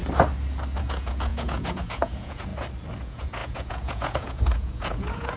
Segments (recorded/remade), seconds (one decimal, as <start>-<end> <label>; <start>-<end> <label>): 0.0-0.8 recorded; 0.8-2.5 remade; 2.5-3.0 recorded; 3.0-5.4 remade